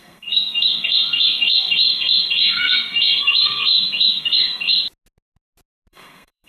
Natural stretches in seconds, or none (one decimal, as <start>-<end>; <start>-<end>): 4.7-5.9